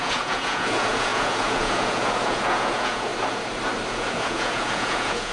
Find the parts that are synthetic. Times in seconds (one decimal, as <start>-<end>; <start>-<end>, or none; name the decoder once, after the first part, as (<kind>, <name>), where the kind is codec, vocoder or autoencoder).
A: 0.0-3.1 (vocoder, Vocos); 3.9-5.3